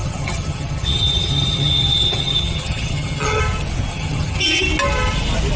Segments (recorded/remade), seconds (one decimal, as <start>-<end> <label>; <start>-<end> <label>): 0.0-3.4 remade; 3.4-3.9 recorded; 3.9-4.6 remade; 4.6-5.6 recorded